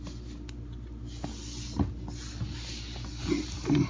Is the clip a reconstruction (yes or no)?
no